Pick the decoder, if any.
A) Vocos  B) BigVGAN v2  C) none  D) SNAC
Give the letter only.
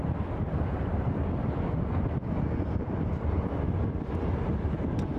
C